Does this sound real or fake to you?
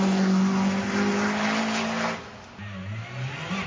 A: real